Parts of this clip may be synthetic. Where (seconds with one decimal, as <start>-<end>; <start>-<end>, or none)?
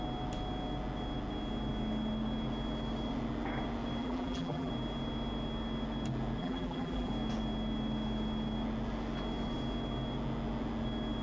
4.0-4.7; 6.4-7.1